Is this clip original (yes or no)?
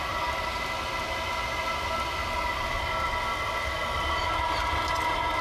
yes